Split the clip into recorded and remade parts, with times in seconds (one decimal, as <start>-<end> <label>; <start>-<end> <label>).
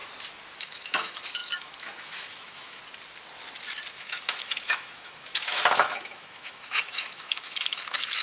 0.0-0.6 recorded; 0.6-2.8 remade; 2.8-3.9 recorded; 3.9-8.2 remade